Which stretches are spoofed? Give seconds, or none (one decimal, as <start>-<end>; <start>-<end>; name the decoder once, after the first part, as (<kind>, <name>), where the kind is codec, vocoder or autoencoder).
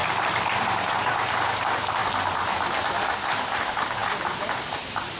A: 0.6-2.0 (vocoder, BigVGAN v2); 3.3-5.2